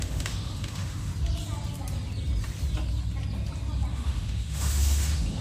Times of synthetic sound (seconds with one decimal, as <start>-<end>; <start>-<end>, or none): 0.0-1.1; 3.9-5.4